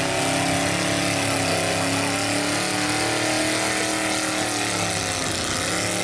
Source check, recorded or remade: recorded